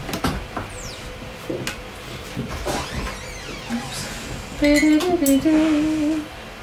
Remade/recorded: recorded